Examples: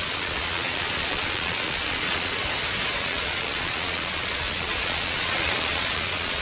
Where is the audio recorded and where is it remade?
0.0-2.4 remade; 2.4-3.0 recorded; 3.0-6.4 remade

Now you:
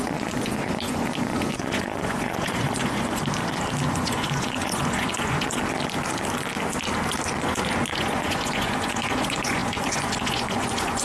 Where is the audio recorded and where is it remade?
0.0-3.2 remade; 3.2-3.9 recorded; 3.9-5.6 remade; 5.6-7.4 recorded; 7.4-11.0 remade

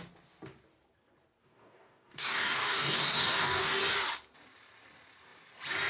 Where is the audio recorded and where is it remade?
0.0-1.4 recorded; 1.4-3.8 remade; 3.8-5.9 recorded

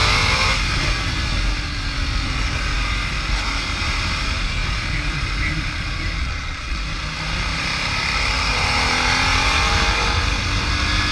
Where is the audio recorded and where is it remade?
0.0-6.2 recorded; 6.2-6.8 remade; 6.8-11.1 recorded